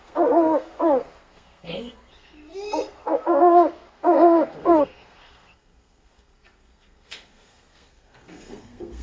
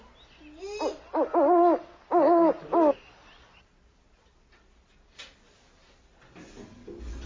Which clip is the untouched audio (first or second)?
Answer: second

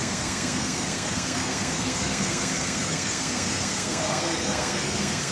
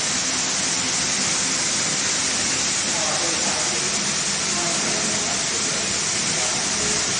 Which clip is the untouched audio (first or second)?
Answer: second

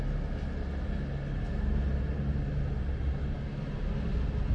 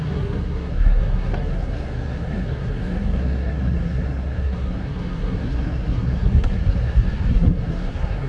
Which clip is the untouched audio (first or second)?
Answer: first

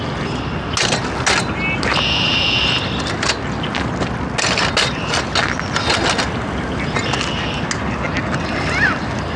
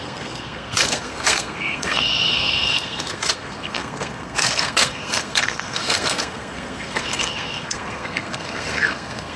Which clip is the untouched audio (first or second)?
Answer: first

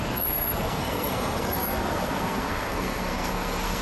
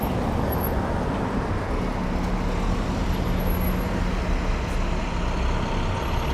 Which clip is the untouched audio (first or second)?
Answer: second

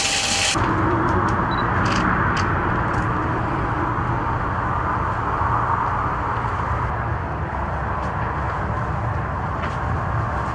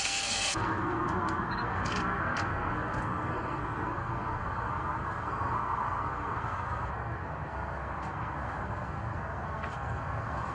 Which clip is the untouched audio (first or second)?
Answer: first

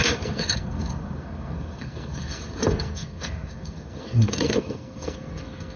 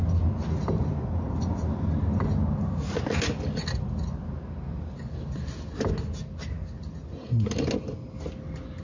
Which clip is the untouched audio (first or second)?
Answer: second